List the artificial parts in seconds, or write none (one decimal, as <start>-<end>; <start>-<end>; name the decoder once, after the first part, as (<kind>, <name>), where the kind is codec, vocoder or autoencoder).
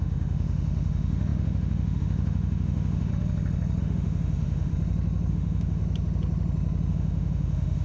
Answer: 0.0-3.1 (autoencoder, DAC-VAE); 3.8-4.7; 5.3-5.8; 6.9-7.8